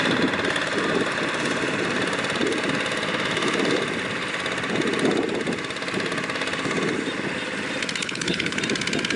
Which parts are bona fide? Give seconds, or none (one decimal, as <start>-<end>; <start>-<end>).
0.0-8.0; 8.6-9.2